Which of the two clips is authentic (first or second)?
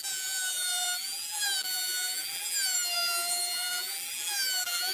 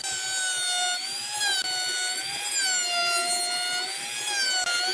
second